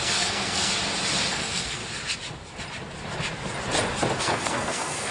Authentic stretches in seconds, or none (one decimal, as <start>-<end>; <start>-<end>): 0.7-1.3; 1.8-4.2

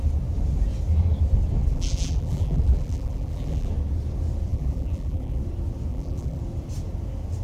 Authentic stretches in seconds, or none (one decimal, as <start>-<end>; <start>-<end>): 0.0-1.6; 3.7-4.5; 5.4-5.9; 6.4-7.4

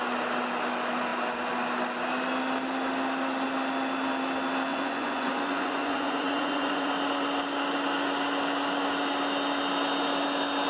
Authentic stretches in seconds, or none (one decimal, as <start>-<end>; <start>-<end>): 0.0-4.7; 6.9-10.7

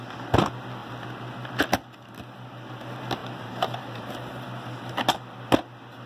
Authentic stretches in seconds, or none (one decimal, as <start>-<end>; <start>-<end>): 0.0-3.2; 4.1-6.1

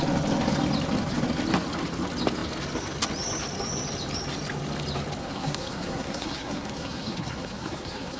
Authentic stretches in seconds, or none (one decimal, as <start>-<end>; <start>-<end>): 0.0-5.2

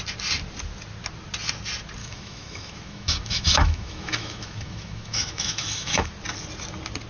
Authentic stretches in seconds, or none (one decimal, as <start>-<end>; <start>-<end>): 0.0-2.0; 6.1-7.1

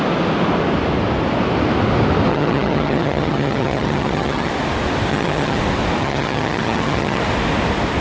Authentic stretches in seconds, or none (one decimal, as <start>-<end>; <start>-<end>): 0.0-2.3; 4.5-5.1; 5.6-6.0; 7.2-8.0

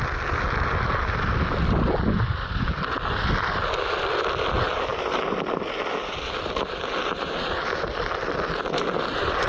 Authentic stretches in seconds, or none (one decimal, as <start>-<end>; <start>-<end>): 0.0-9.5